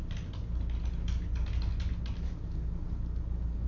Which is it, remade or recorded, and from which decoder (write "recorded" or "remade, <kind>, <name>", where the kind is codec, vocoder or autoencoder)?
recorded